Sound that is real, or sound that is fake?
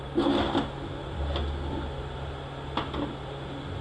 real